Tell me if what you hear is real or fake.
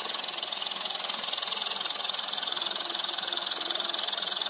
fake